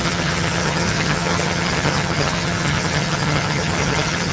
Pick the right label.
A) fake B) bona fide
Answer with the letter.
A